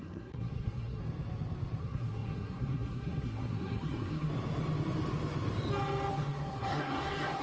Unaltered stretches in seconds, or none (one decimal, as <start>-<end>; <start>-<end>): 1.0-1.8; 4.3-6.1